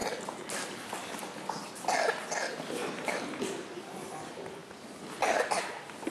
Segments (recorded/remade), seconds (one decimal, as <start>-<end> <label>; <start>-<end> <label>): 0.0-6.1 recorded